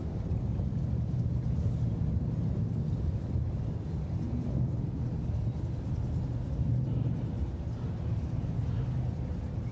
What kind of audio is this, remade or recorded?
recorded